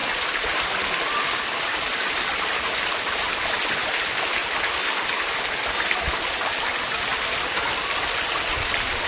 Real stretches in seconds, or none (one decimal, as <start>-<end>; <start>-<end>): 3.5-4.4; 5.5-7.1